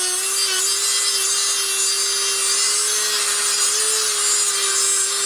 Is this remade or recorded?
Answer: recorded